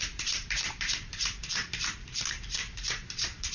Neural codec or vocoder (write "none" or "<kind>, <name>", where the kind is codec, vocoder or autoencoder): vocoder, BigVGAN v2